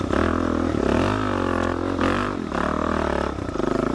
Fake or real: real